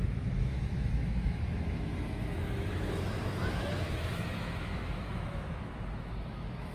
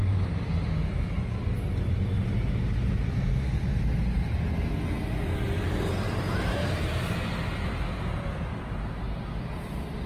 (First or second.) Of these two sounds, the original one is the second